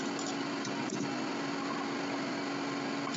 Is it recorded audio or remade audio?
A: recorded